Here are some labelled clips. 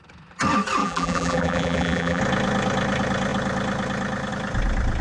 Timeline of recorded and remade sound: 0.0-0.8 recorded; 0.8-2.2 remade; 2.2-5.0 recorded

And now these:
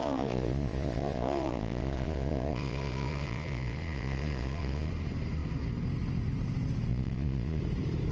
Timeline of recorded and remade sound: 0.0-4.9 remade; 4.9-6.9 recorded; 6.9-7.6 remade; 7.6-8.1 recorded

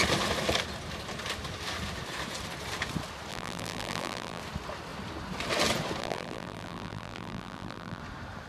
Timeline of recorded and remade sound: 0.0-3.3 recorded; 3.3-4.4 remade; 4.4-6.0 recorded; 6.0-8.0 remade; 8.0-8.5 recorded

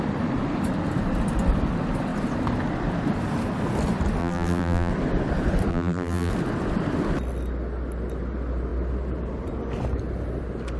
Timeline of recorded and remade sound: 0.0-4.2 recorded; 4.2-4.9 remade; 4.9-5.7 recorded; 5.7-6.3 remade; 6.3-10.8 recorded

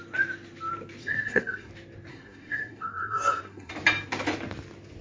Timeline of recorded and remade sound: 0.0-1.0 recorded; 1.0-1.7 remade; 1.7-2.1 recorded; 2.1-3.7 remade; 3.7-5.0 recorded

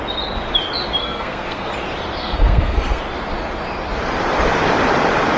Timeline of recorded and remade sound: 0.0-1.0 recorded; 1.0-1.7 remade; 1.7-2.2 recorded; 2.2-3.0 remade; 3.0-5.4 recorded

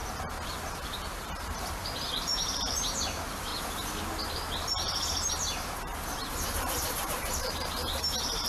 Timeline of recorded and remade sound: 0.0-0.7 recorded; 0.7-3.5 remade; 3.5-5.3 recorded; 5.3-5.9 remade; 5.9-6.5 recorded; 6.5-8.5 remade

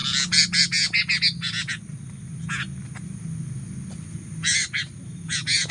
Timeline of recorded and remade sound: 0.0-4.5 recorded; 4.5-5.2 remade; 5.2-5.7 recorded